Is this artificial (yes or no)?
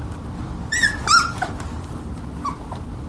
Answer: no